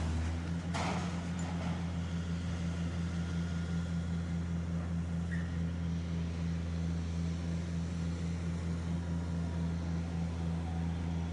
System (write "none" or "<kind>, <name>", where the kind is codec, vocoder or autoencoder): none